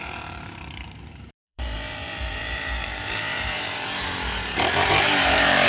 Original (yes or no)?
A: no